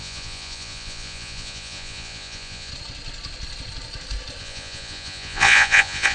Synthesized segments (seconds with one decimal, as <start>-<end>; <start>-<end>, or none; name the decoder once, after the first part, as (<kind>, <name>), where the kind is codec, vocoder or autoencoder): 0.0-2.7 (vocoder, Vocos); 4.4-6.1